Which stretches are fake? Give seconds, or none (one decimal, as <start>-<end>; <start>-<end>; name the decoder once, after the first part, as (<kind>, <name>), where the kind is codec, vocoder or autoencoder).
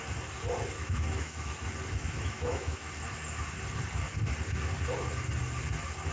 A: 0.8-1.5 (autoencoder, DAC-VAE); 2.0-2.9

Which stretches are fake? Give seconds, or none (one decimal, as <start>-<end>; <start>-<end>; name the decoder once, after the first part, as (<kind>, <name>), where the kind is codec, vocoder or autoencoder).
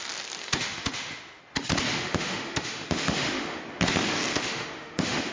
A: 0.4-1.4 (autoencoder, DAC-VAE); 1.9-3.6; 4.3-5.3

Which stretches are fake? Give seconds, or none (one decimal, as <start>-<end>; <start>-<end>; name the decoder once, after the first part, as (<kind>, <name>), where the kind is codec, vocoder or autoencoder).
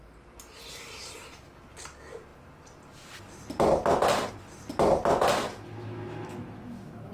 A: 5.4-7.1 (autoencoder, DAC-VAE)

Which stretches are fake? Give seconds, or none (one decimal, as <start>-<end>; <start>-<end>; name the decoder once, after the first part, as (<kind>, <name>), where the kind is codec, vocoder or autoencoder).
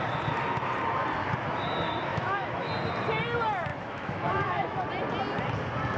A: 2.1-2.7 (autoencoder, DAC-VAE); 3.7-4.8